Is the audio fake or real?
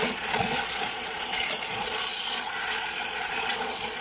fake